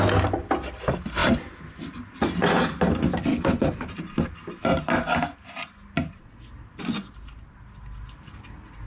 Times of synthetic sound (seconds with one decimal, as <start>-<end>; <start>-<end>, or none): 3.3-3.9